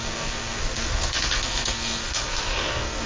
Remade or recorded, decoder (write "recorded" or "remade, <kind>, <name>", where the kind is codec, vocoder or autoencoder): remade, codec, SNAC